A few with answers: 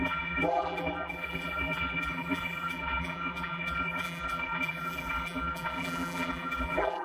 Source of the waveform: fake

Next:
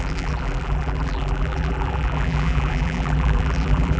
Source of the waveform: fake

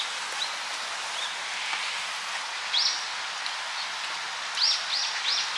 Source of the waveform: real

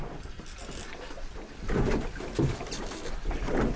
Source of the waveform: real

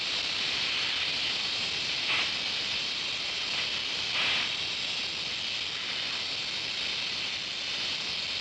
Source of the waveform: real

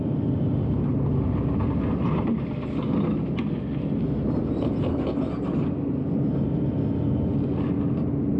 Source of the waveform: real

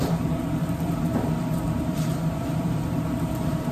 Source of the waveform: fake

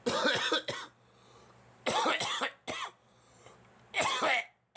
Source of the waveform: real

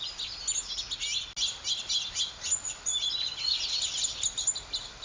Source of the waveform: real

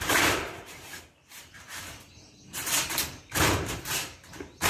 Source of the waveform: fake